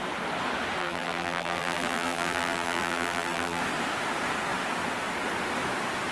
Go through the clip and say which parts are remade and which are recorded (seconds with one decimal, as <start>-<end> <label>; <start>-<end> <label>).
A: 0.0-0.8 recorded; 0.8-3.6 remade; 3.6-6.1 recorded